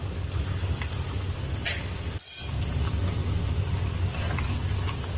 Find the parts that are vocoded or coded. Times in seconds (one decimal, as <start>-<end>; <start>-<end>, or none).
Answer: none